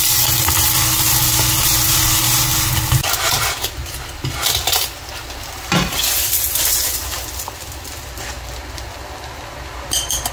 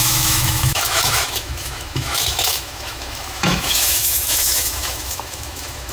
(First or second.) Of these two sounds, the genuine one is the first